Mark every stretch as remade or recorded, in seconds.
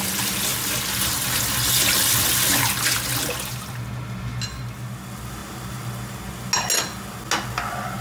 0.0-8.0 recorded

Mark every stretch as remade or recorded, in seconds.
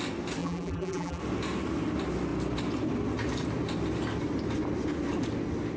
0.0-0.4 recorded; 0.4-1.2 remade; 1.2-5.8 recorded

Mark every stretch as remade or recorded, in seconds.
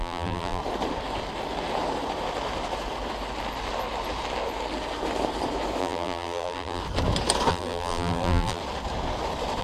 0.0-0.6 remade; 0.6-5.8 recorded; 5.8-6.8 remade; 6.8-7.5 recorded; 7.5-8.6 remade; 8.6-9.6 recorded